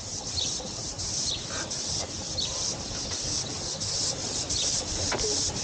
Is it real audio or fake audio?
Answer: fake